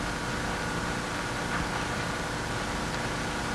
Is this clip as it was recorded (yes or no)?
yes